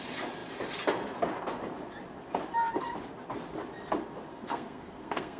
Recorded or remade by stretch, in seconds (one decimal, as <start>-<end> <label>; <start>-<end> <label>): 0.0-4.3 recorded; 4.3-5.4 remade